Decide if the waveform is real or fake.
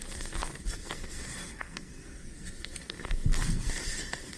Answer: fake